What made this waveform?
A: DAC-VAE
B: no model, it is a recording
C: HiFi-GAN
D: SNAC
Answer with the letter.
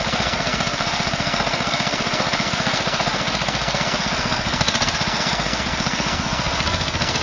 D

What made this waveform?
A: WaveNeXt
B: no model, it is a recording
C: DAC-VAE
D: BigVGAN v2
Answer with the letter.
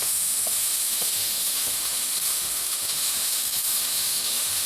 C